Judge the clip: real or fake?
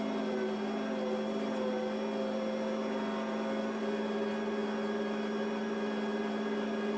real